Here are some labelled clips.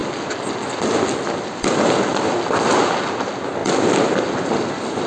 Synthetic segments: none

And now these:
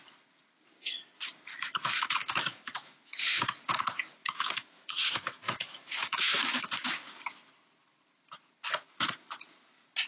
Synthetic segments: 1.5-3.4 (autoencoder, DAC-VAE); 4.2-7.1

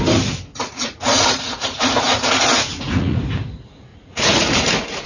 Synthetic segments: 0.5-3.2 (vocoder, Vocos); 3.9-5.1

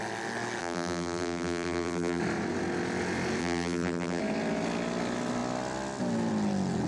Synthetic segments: 0.6-2.2 (vocoder, BigVGAN v2); 3.4-4.2

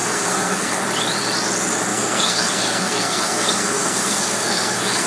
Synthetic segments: 0.0-0.8 (codec, SNAC); 1.9-5.1

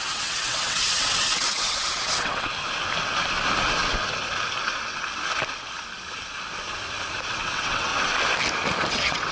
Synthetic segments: 0.0-2.5 (vocoder, WaveNeXt); 7.3-7.9; 8.9-9.3

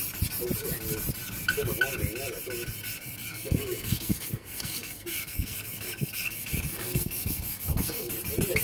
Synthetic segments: 3.0-8.1 (codec, SNAC)

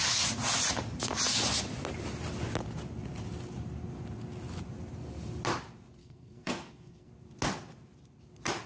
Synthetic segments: 6.0-7.1 (codec, SNAC)